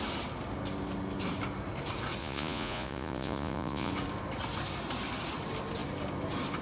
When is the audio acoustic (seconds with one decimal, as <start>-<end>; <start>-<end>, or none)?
0.0-2.2; 3.9-6.6